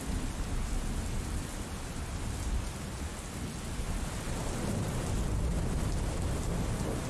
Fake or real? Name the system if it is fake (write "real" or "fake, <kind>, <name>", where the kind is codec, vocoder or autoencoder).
real